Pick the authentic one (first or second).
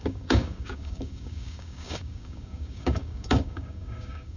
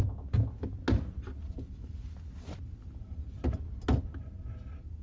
second